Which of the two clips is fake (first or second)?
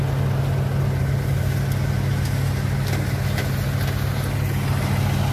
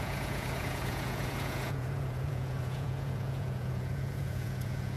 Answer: second